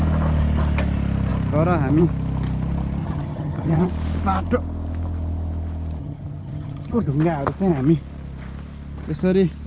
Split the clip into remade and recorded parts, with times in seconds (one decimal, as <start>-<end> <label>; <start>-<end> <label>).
0.0-3.0 recorded; 3.0-3.9 remade; 3.9-6.0 recorded; 6.0-7.1 remade; 7.1-9.7 recorded